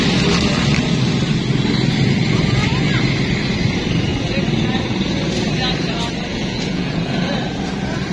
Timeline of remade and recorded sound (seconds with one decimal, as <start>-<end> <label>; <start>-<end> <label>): 0.0-6.3 recorded; 6.3-7.3 remade; 7.3-8.1 recorded